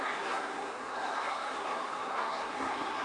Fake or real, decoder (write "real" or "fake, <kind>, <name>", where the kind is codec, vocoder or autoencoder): fake, codec, SNAC